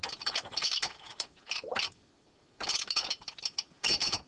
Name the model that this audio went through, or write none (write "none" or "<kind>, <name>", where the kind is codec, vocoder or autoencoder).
vocoder, BigVGAN v2